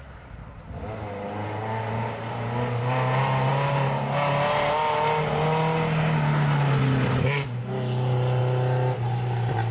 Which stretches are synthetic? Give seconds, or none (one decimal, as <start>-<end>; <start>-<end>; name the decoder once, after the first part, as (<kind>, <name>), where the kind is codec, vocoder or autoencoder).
none